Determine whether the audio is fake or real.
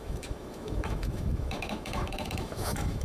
fake